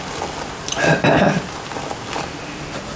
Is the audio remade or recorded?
recorded